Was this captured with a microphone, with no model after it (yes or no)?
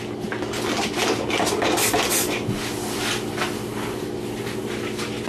yes